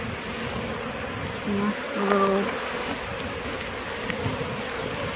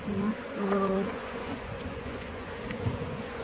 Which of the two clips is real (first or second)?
first